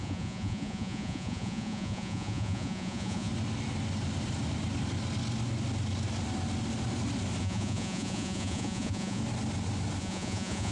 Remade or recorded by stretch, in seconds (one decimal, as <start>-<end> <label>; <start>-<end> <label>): 0.0-3.3 remade; 3.3-7.4 recorded; 7.4-9.2 remade; 9.2-10.0 recorded; 10.0-10.7 remade